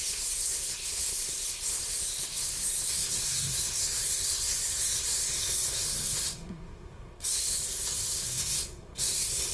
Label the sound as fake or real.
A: fake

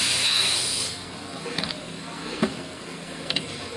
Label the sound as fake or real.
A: fake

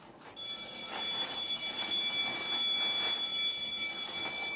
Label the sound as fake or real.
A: real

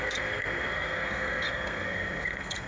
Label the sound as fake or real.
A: fake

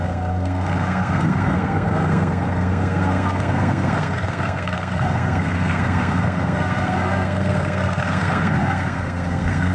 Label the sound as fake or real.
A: fake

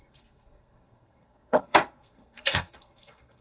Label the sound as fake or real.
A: fake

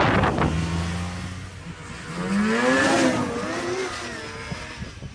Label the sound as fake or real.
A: real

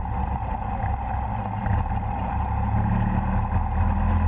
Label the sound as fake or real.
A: real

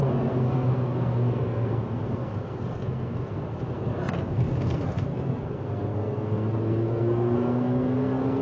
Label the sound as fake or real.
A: fake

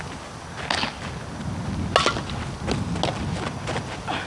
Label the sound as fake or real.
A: real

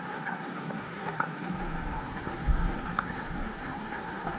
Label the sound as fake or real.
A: fake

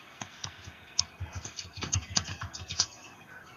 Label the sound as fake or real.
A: fake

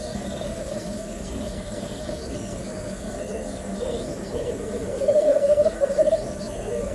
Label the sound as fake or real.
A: fake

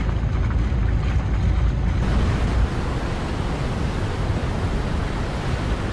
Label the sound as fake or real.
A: real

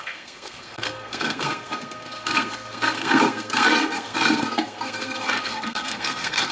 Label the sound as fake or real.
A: fake